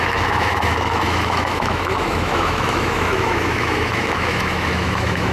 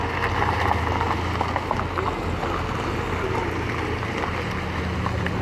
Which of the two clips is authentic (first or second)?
second